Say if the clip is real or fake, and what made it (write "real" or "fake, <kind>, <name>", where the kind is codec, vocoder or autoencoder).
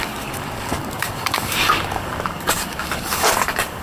fake, codec, DAC